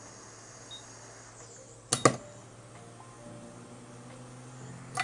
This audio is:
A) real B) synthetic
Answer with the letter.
A